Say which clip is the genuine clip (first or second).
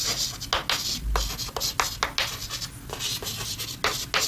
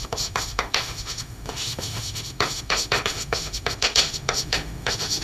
first